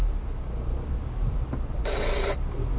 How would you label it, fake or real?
fake